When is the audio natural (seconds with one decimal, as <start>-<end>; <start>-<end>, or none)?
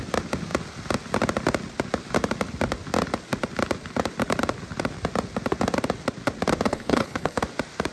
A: 0.0-6.7; 7.4-7.9